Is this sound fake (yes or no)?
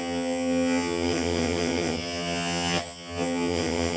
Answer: yes